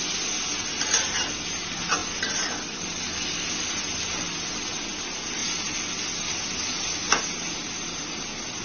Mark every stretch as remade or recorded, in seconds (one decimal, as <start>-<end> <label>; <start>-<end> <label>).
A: 0.0-8.6 recorded